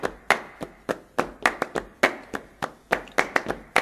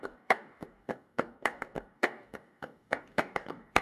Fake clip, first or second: second